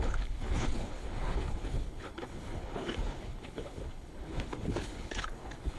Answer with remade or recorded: remade